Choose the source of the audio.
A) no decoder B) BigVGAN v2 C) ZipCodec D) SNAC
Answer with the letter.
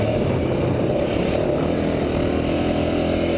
A